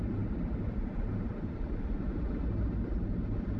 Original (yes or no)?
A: yes